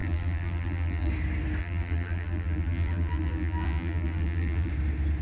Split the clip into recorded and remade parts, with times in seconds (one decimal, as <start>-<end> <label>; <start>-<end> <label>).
0.0-1.1 remade; 1.1-1.6 recorded; 1.6-4.7 remade; 4.7-5.2 recorded